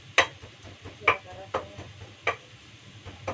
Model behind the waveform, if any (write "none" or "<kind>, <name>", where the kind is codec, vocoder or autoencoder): none